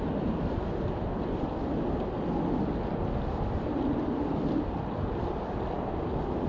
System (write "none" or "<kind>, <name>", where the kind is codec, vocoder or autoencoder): none